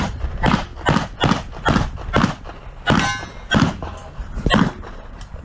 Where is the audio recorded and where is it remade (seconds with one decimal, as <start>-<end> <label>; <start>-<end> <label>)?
0.0-0.7 remade; 0.7-3.5 recorded; 3.5-4.0 remade; 4.0-4.9 recorded; 4.9-5.4 remade